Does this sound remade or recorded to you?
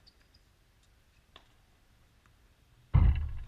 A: recorded